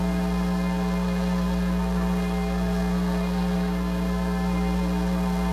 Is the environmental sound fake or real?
fake